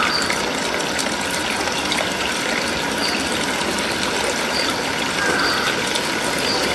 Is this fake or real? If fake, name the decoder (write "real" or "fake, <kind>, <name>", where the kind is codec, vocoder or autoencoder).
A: real